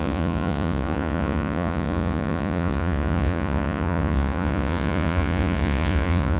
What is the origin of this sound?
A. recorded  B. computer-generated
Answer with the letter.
B